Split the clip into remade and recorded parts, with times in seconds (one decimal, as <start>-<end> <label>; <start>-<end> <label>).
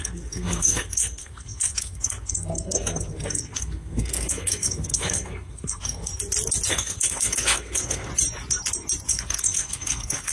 0.0-6.1 remade; 6.1-6.7 recorded; 6.7-8.1 remade; 8.1-9.1 recorded; 9.1-10.3 remade